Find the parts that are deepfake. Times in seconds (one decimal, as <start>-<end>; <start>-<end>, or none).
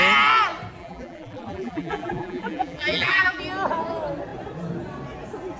0.8-3.4